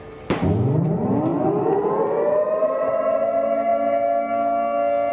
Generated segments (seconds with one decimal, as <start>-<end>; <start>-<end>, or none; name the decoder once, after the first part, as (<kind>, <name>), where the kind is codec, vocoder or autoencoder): none

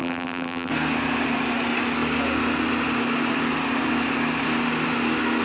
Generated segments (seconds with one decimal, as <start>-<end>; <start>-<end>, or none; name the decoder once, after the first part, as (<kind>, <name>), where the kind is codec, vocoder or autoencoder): 0.0-0.7 (vocoder, BigVGAN v2)

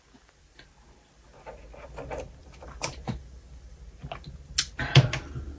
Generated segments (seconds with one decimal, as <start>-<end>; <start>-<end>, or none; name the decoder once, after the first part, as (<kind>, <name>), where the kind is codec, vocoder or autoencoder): 2.4-3.8 (vocoder, BigVGAN v2)

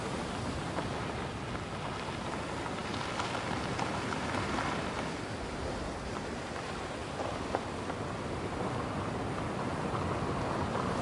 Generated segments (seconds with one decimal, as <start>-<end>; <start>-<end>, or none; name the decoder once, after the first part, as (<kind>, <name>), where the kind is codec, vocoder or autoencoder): 2.8-5.8 (vocoder, BigVGAN v2); 7.0-8.0

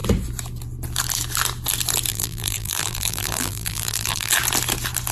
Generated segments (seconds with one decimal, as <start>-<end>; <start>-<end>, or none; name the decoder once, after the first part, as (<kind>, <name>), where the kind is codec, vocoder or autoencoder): 2.1-4.3 (vocoder, BigVGAN v2)

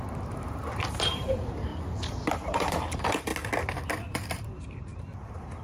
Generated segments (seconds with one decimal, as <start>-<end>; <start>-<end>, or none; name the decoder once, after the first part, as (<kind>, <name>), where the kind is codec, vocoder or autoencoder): 0.0-1.7 (vocoder, BigVGAN v2); 2.3-3.3; 4.1-5.6